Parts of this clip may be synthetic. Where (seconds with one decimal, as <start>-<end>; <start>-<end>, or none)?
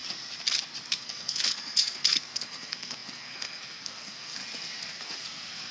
0.9-4.4; 4.9-5.7